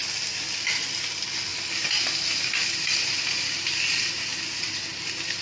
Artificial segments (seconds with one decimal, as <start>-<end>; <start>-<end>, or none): 0.0-1.1; 1.5-4.7

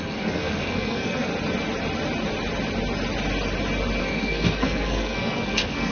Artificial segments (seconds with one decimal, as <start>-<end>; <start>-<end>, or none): 0.0-1.3; 4.0-5.9